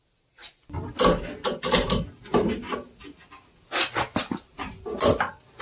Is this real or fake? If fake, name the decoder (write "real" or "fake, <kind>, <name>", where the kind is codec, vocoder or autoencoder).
real